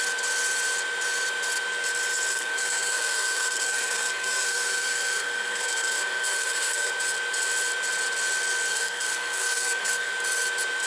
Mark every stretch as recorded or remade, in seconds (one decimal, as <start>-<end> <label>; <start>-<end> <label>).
0.0-2.3 recorded; 2.3-6.9 remade; 6.9-8.7 recorded; 8.7-10.1 remade; 10.1-10.9 recorded